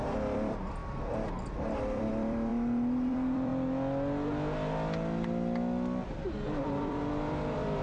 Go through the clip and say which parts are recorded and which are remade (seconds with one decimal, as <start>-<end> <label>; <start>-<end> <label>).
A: 0.0-2.5 remade; 2.5-3.1 recorded; 3.1-3.5 remade; 3.5-6.6 recorded; 6.6-7.8 remade